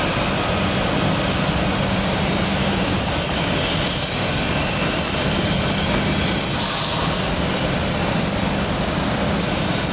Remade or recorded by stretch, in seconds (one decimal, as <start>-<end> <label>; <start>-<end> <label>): 0.0-2.6 recorded; 2.6-3.1 remade; 3.1-9.9 recorded